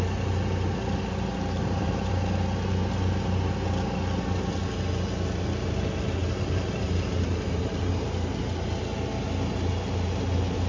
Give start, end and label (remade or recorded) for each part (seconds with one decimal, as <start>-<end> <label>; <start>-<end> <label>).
0.0-1.6 recorded; 1.6-2.1 remade; 2.1-6.2 recorded; 6.2-7.9 remade; 7.9-10.7 recorded

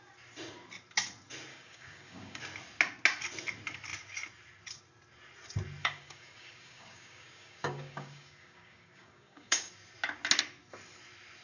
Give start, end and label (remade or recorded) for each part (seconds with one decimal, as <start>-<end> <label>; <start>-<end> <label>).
0.0-1.5 recorded; 1.5-2.4 remade; 2.4-5.8 recorded; 5.8-9.7 remade; 9.7-11.4 recorded

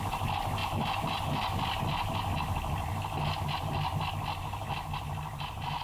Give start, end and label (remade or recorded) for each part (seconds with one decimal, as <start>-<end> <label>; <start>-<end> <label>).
0.0-5.8 recorded

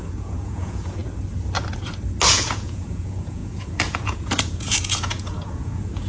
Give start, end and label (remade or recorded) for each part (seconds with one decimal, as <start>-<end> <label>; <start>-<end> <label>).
0.0-1.0 remade; 1.0-2.3 recorded; 2.3-6.1 remade